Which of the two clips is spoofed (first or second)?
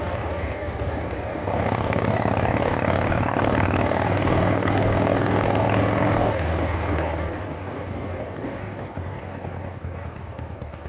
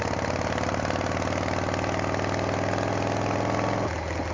first